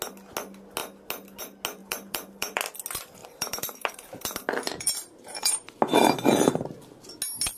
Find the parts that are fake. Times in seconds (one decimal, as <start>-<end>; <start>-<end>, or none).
1.8-2.6; 3.2-5.5